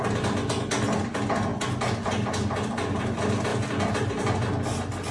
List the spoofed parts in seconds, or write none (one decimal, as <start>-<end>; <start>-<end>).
none